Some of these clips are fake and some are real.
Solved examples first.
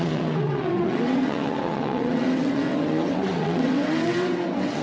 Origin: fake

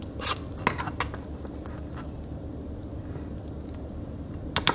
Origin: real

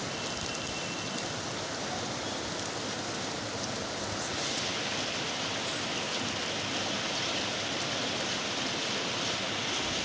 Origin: real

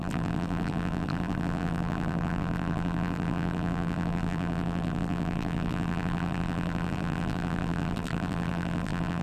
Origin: fake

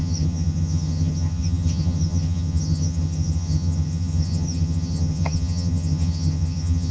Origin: fake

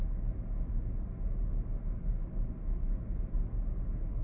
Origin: real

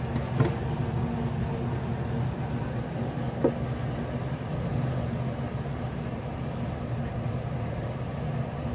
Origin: real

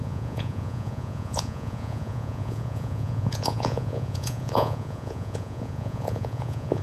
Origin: fake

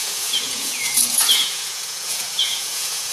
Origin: fake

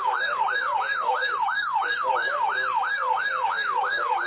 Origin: fake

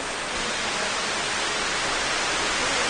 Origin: real